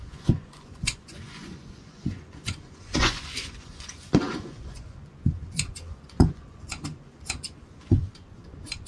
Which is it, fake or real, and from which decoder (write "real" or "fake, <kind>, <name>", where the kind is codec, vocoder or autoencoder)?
fake, vocoder, Vocos